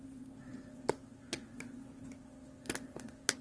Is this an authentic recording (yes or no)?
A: yes